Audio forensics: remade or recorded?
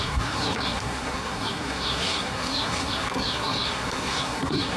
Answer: remade